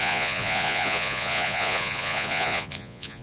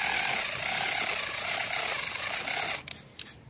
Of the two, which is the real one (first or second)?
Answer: second